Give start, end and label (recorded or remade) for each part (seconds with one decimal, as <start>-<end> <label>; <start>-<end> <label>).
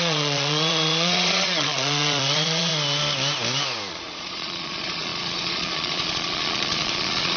0.0-2.7 remade; 2.7-3.9 recorded; 3.9-7.4 remade